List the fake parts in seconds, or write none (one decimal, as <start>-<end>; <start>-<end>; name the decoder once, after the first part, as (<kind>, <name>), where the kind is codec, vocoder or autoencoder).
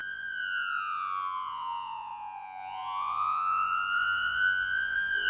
0.0-5.3 (vocoder, Vocos)